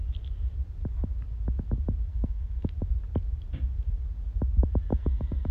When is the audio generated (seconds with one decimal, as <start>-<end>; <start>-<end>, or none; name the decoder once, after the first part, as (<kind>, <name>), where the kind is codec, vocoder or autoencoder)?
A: 2.1-2.7 (codec, SNAC); 4.9-5.5